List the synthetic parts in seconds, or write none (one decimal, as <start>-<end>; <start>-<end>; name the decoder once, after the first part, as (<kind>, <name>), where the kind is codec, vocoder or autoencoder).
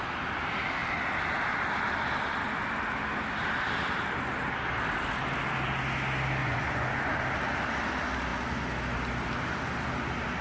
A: 6.4-7.0 (vocoder, Vocos)